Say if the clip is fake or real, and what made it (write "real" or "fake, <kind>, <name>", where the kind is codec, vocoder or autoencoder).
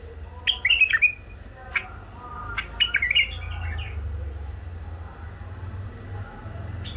real